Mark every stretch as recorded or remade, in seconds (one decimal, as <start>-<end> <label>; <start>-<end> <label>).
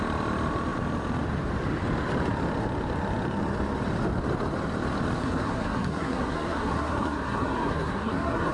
0.0-5.2 recorded; 5.2-8.5 remade